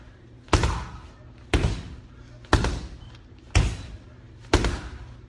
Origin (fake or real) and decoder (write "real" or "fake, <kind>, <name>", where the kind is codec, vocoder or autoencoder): real